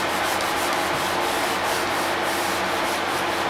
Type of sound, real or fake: real